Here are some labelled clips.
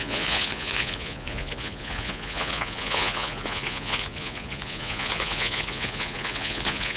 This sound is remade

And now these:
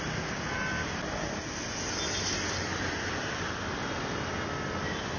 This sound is recorded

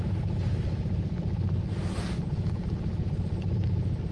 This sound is recorded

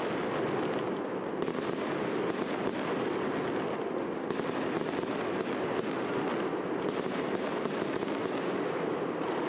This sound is recorded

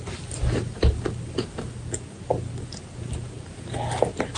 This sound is recorded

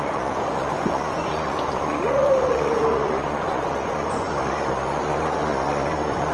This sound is remade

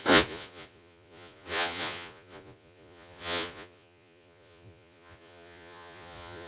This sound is remade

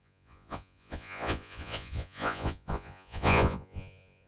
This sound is remade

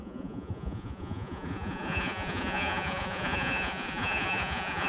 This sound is remade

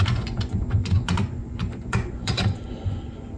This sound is remade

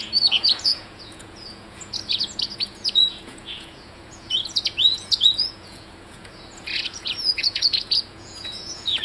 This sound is remade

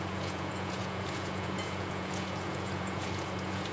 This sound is remade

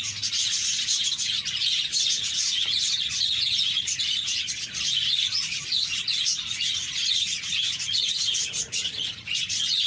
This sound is remade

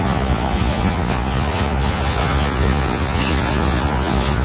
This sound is remade